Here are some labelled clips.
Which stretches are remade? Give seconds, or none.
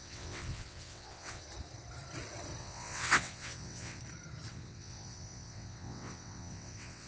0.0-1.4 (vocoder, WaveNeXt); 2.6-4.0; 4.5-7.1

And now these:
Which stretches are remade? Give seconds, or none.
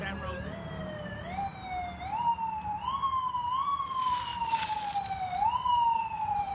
none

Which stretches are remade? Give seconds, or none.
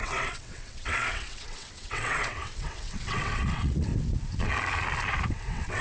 0.0-3.9 (vocoder, WaveNeXt); 5.3-5.8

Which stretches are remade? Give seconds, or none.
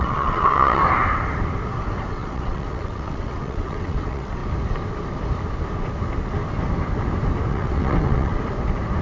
0.0-0.8 (vocoder, WaveNeXt); 2.1-4.4; 7.5-8.3